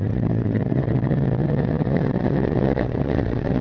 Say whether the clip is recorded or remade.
remade